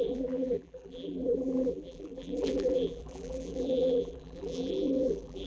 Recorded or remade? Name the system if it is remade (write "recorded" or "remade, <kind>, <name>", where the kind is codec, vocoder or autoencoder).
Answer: remade, vocoder, BigVGAN v2